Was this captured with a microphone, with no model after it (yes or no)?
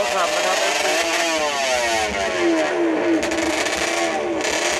yes